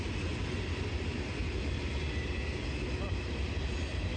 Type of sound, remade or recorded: recorded